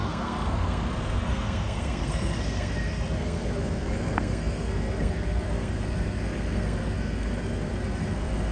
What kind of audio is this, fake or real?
fake